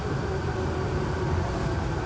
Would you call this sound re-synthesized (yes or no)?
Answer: no